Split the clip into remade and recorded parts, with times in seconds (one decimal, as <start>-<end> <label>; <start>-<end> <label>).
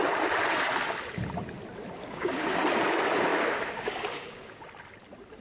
0.0-2.0 recorded; 2.0-2.6 remade; 2.6-3.3 recorded; 3.3-4.6 remade; 4.6-5.4 recorded